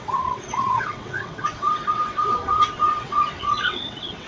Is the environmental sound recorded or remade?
remade